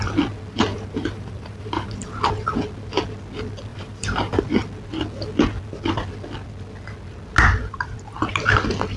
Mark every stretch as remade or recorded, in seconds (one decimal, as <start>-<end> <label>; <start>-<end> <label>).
0.0-0.7 recorded; 0.7-1.9 remade; 1.9-3.7 recorded; 3.7-4.4 remade; 4.4-9.0 recorded